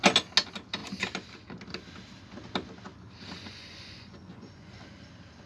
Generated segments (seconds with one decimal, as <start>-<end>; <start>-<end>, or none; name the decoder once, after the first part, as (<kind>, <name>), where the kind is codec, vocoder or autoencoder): 3.4-4.7 (vocoder, Vocos)